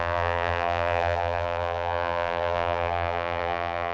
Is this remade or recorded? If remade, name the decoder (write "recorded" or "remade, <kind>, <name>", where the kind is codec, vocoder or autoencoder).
remade, vocoder, BigVGAN v2